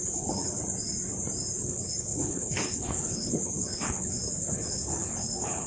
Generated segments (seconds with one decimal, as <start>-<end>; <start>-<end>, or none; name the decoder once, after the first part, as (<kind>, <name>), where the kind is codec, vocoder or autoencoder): 0.0-0.6 (codec, HILCodec); 1.6-5.7